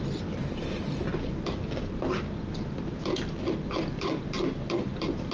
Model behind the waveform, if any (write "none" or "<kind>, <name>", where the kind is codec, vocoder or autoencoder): none